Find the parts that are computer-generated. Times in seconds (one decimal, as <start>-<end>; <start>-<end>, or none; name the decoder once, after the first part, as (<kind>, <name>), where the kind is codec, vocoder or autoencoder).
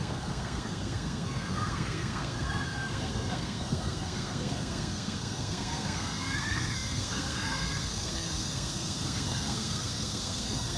0.0-10.8 (codec, SNAC)